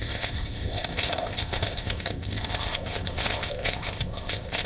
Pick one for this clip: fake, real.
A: fake